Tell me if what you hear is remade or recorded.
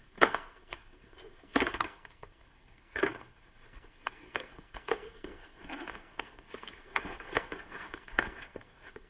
remade